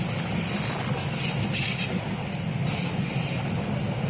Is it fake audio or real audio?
real